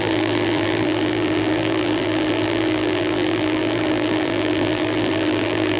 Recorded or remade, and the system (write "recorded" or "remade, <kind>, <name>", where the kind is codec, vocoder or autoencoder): remade, vocoder, BigVGAN v2